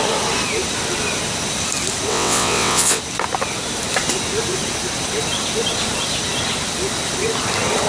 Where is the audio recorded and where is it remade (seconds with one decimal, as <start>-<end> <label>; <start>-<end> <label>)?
0.0-2.1 recorded; 2.1-3.0 remade; 3.0-7.9 recorded